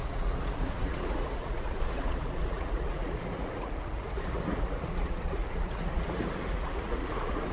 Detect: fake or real fake